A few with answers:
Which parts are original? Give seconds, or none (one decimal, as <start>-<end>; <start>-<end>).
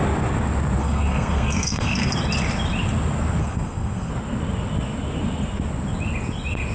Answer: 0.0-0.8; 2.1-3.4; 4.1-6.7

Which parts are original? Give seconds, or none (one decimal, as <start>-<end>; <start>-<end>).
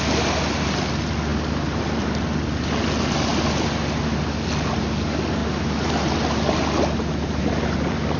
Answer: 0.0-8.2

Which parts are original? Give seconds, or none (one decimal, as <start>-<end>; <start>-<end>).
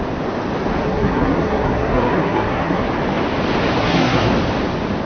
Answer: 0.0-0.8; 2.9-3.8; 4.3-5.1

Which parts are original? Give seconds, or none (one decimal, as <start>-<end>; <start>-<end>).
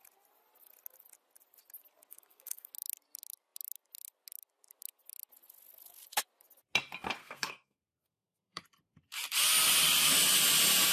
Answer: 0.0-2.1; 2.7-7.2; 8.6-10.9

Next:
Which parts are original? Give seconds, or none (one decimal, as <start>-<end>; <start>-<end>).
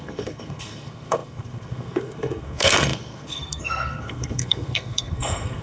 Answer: none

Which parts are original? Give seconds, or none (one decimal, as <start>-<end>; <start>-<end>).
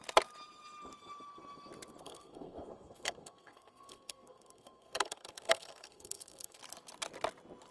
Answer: 0.0-2.0; 6.6-7.7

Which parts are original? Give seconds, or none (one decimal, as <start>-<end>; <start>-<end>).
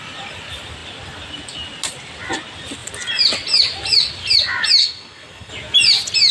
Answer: 0.0-4.8; 5.5-6.3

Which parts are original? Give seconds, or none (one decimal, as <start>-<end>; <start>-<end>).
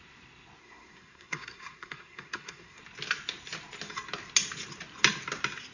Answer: 0.0-0.6; 2.8-5.7